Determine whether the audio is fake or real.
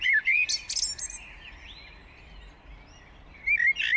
real